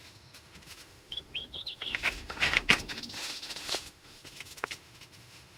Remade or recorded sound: remade